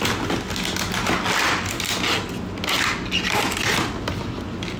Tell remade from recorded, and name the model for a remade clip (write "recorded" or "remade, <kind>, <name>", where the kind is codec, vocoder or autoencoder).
recorded